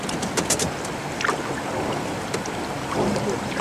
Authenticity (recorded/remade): recorded